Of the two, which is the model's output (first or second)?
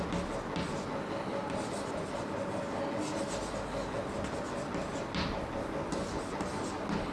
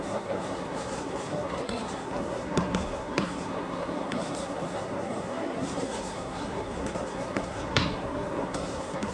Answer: second